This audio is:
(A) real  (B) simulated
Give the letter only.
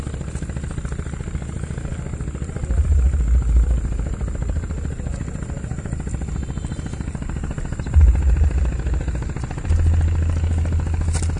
A